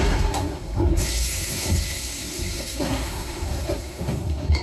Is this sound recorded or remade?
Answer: remade